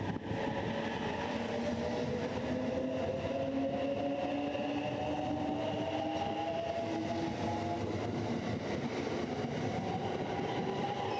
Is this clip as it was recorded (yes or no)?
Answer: yes